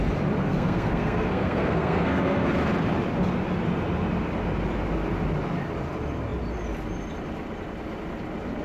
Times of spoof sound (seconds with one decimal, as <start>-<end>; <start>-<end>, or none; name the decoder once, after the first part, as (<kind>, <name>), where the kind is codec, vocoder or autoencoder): 0.4-2.5 (codec, SNAC)